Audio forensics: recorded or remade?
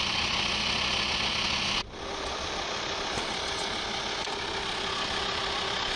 remade